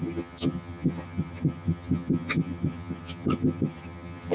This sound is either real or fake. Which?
fake